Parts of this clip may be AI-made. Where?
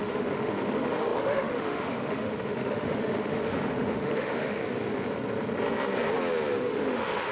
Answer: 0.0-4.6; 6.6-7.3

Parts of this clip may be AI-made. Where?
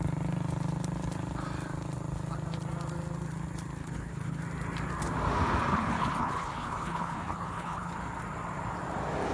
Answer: 3.8-4.4; 5.7-7.9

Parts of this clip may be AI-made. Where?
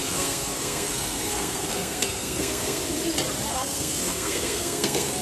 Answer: 0.0-2.8; 3.5-5.2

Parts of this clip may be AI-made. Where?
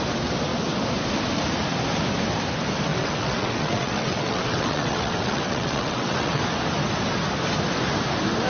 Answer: 2.9-6.4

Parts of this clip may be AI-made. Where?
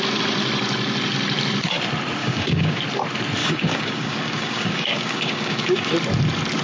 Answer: 2.2-2.8; 3.4-5.9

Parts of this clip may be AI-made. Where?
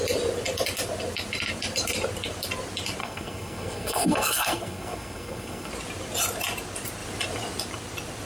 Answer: 3.0-5.7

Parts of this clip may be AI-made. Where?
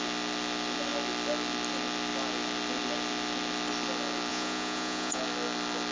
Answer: 4.3-5.2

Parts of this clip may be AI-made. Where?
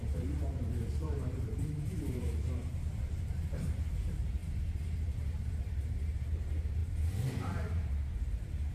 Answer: 0.0-4.4; 5.0-8.7